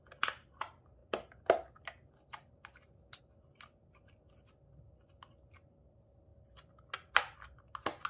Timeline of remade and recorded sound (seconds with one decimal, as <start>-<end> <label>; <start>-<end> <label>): 0.0-8.1 recorded